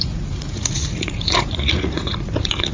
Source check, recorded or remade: remade